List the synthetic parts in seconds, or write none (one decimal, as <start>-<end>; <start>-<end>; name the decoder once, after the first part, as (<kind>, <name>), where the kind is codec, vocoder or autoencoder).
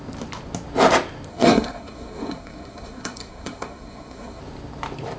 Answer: 1.3-4.4 (codec, SNAC)